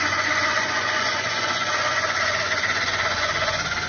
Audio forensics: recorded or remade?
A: remade